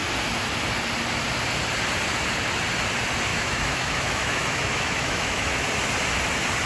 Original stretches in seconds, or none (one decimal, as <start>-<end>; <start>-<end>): 0.0-3.3; 5.7-6.7